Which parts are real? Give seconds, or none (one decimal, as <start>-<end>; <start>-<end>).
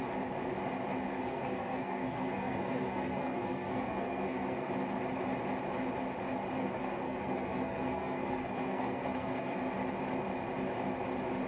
0.0-1.1; 4.7-6.6; 9.6-11.5